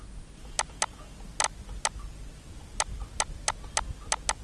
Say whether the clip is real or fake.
real